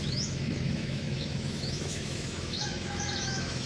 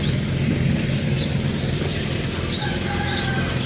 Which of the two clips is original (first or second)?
second